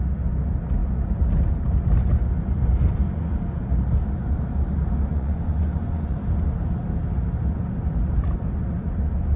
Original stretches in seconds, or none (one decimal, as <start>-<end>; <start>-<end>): 0.0-5.1; 6.2-9.4

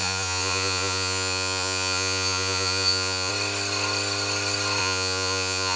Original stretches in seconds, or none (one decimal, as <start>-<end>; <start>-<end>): 3.3-4.8